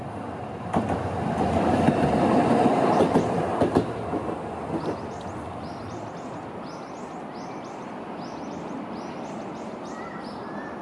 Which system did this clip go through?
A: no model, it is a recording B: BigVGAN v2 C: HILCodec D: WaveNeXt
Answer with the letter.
A